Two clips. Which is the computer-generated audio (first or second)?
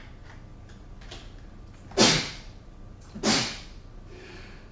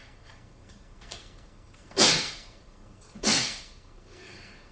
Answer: second